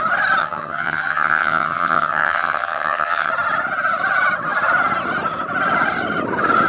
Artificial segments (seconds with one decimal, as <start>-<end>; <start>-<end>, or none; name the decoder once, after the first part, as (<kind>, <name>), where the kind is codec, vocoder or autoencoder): 0.4-3.3 (vocoder, HiFi-GAN)